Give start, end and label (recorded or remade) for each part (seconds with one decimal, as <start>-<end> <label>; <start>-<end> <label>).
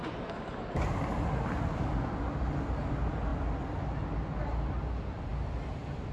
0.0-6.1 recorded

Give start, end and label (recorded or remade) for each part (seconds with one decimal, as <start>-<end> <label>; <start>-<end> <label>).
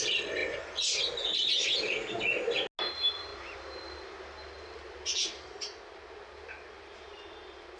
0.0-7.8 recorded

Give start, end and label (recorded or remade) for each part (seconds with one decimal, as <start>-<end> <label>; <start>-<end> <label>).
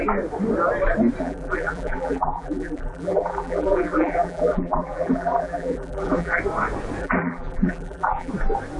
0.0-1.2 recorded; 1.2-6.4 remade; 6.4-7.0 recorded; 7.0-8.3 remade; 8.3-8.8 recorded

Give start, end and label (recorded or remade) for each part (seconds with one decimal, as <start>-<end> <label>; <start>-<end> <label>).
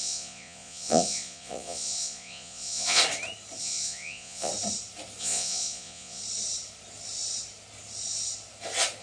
0.0-3.0 remade; 3.0-3.6 recorded; 3.6-4.5 remade; 4.5-5.2 recorded; 5.2-6.2 remade; 6.2-9.0 recorded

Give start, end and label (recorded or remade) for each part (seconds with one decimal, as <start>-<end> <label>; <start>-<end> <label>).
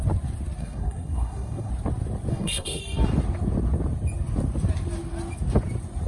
0.0-0.6 recorded; 0.6-1.7 remade; 1.7-2.3 recorded; 2.3-2.8 remade; 2.8-6.1 recorded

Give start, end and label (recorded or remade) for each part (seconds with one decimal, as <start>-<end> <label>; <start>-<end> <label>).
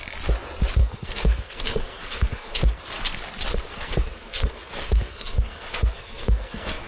0.0-0.8 recorded; 0.8-2.8 remade; 2.8-3.5 recorded; 3.5-6.9 remade